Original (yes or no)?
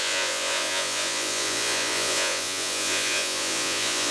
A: no